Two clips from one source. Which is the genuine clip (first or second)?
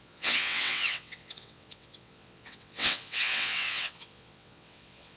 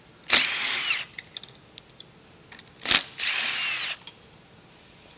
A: second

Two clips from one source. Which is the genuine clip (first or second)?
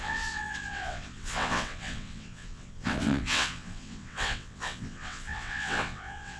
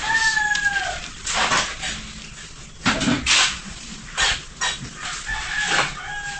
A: second